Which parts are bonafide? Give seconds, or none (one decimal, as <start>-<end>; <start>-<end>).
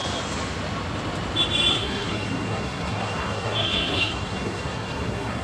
0.0-1.7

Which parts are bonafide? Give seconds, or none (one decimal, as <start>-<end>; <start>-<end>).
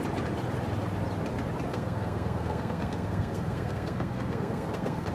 0.0-1.7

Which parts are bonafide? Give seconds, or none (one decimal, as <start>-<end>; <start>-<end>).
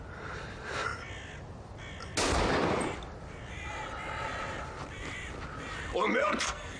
0.0-6.2